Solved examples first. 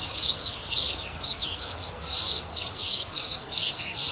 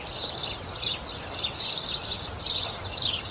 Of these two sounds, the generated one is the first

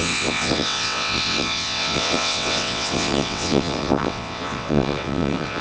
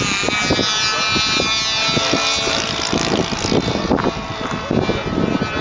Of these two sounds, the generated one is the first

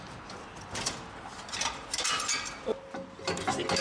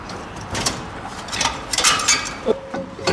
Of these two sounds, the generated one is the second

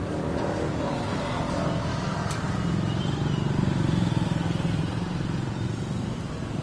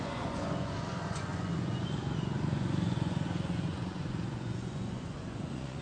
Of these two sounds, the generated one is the second